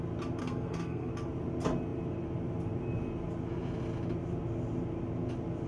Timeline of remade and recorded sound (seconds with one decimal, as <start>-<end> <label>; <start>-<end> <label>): 0.0-0.4 recorded; 0.4-1.1 remade; 1.1-5.7 recorded